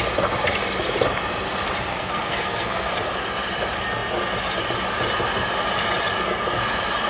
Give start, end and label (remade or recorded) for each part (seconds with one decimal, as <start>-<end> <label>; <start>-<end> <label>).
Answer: 0.0-1.9 recorded; 1.9-2.9 remade; 2.9-7.1 recorded